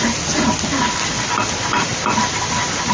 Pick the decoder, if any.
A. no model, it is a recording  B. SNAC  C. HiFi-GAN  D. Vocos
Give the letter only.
A